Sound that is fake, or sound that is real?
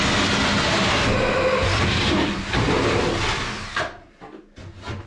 real